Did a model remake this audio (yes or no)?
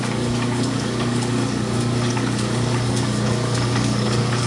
yes